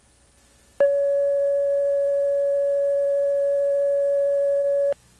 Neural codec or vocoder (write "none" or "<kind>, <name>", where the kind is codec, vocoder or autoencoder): none